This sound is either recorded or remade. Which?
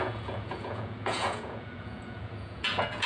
remade